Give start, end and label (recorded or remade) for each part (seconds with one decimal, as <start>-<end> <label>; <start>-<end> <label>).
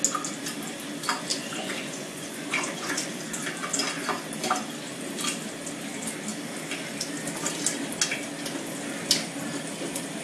0.0-1.3 recorded; 1.3-3.2 remade; 3.2-10.2 recorded